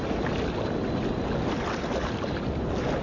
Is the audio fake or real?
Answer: real